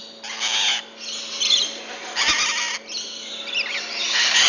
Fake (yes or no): no